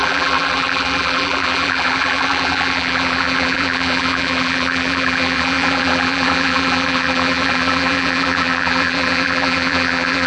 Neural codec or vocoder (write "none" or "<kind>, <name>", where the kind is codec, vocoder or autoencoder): vocoder, BigVGAN v2